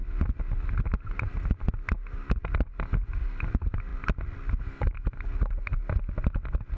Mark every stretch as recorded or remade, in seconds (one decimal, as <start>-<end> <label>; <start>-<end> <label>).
0.0-6.8 recorded